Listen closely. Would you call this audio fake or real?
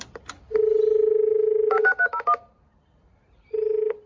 fake